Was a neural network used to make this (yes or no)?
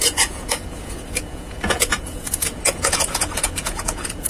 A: yes